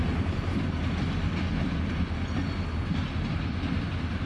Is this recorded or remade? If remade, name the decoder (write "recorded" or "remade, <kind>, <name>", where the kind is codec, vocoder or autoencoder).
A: recorded